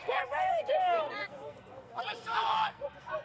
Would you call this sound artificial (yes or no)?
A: yes